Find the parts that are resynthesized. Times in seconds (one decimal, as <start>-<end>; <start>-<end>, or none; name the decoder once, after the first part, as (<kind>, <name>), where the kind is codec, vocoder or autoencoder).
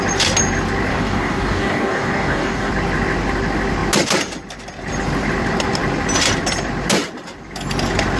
0.9-2.7 (codec, DAC)